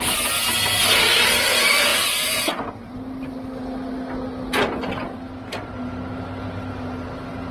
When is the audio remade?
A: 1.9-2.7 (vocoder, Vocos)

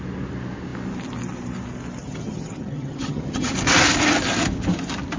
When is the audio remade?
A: 2.0-3.5 (vocoder, HiFi-GAN)

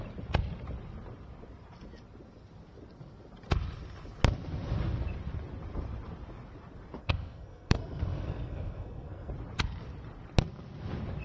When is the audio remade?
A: 7.0-9.3 (codec, SNAC)

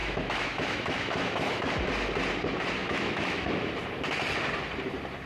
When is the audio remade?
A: 0.0-1.7 (autoencoder, DAC-VAE); 2.8-3.7

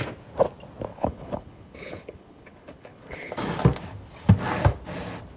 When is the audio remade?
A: 0.9-3.3 (codec, HILCodec)

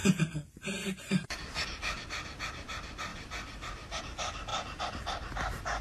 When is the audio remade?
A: 3.1-4.0 (vocoder, BigVGAN v2); 4.5-5.8

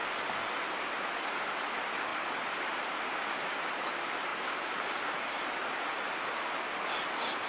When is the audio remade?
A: none